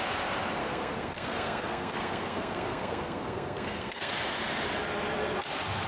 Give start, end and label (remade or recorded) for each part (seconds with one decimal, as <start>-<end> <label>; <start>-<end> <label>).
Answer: 0.0-0.6 recorded; 0.6-4.1 remade; 4.1-5.9 recorded